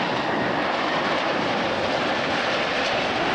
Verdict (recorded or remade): remade